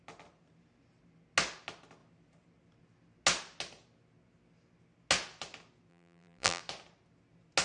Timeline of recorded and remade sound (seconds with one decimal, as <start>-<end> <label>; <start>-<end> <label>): 0.0-5.9 recorded; 5.9-6.6 remade; 6.6-7.6 recorded